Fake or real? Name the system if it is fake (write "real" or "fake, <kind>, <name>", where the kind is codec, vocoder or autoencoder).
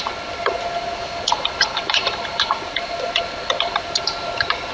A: fake, vocoder, BigVGAN v2